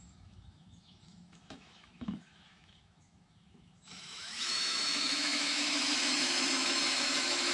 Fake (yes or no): yes